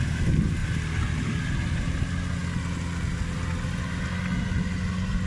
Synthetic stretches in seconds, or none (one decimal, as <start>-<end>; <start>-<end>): none